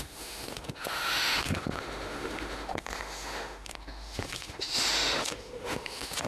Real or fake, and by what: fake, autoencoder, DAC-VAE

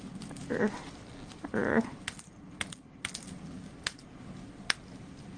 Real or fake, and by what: real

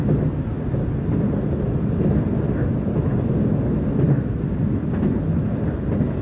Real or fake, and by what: real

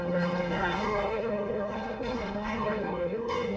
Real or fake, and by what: fake, codec, SNAC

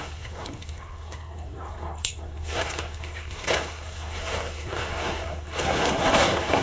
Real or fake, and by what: fake, codec, SNAC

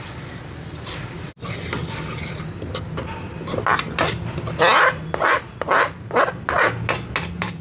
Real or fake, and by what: real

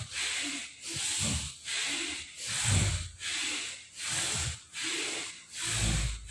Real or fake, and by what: real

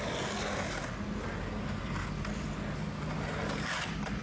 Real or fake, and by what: real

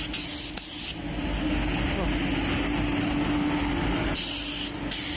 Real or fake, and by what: real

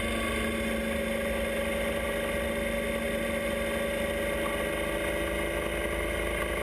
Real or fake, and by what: real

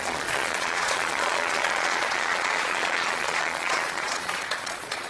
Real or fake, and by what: fake, vocoder, Vocos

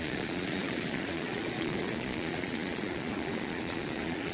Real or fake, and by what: fake, vocoder, Vocos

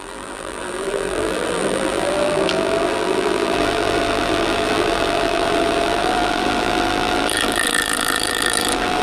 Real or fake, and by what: fake, vocoder, BigVGAN v2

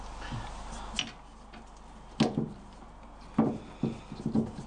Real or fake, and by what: real